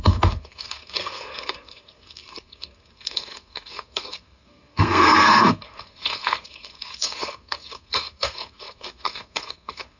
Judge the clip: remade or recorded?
remade